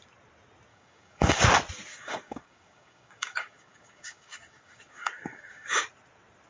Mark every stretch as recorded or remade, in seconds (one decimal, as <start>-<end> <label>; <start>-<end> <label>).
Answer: 0.0-0.7 recorded; 0.7-1.4 remade; 1.4-1.9 recorded; 1.9-5.8 remade; 5.8-6.5 recorded